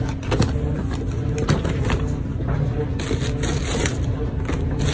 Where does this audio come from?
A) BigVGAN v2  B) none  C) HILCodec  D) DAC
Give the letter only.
B